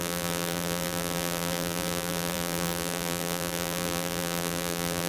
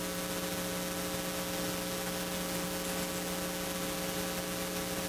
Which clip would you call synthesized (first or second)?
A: first